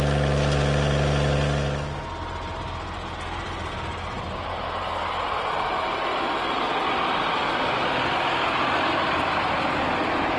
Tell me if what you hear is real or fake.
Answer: real